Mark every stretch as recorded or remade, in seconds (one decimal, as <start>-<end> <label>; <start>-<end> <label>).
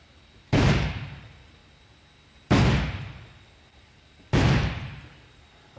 0.0-1.6 remade; 1.6-3.7 recorded; 3.7-5.8 remade